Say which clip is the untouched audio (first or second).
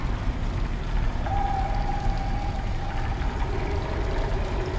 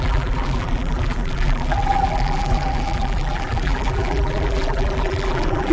first